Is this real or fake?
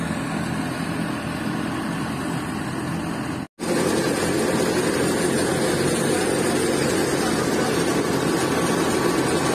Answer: real